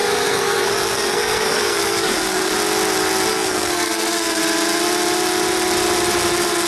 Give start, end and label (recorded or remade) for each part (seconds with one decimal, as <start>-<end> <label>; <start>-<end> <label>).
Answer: 0.0-2.5 remade; 2.5-3.3 recorded; 3.3-4.4 remade; 4.4-6.7 recorded